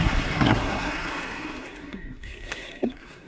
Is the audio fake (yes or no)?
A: yes